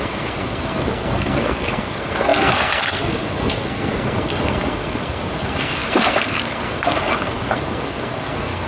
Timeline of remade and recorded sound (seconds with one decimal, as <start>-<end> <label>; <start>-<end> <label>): 0.0-8.7 remade